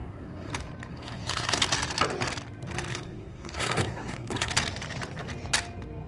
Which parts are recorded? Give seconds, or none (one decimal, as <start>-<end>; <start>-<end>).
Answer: 0.5-0.9; 1.6-2.9; 4.5-6.1